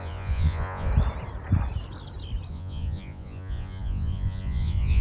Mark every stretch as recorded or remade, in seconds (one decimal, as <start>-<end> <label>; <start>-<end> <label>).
0.0-0.9 remade; 0.9-2.5 recorded; 2.5-5.0 remade